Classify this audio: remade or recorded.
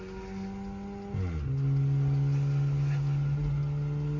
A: recorded